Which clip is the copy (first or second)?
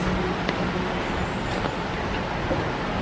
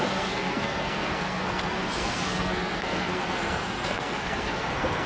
second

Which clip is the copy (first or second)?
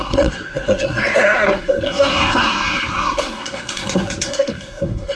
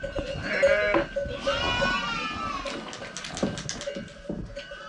first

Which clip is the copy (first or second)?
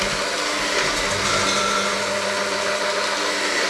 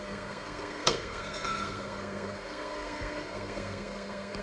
second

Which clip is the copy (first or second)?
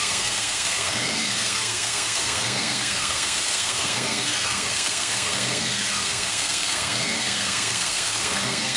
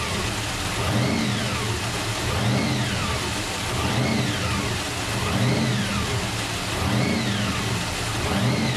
first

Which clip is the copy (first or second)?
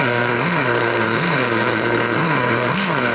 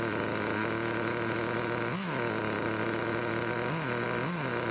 first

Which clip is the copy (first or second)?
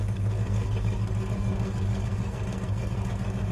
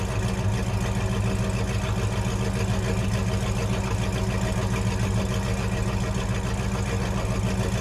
first